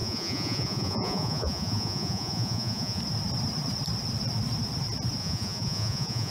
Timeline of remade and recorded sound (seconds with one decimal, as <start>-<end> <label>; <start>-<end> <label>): 0.0-3.0 remade; 3.0-5.2 recorded; 5.2-6.3 remade